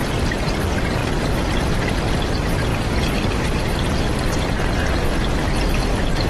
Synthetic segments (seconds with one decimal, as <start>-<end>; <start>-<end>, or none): none

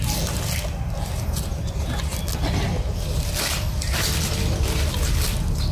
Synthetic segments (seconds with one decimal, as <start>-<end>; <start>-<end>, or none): none